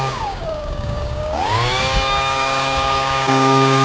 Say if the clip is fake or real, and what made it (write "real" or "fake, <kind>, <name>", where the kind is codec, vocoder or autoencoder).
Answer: fake, codec, DAC